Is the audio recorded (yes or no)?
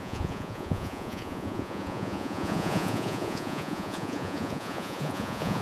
no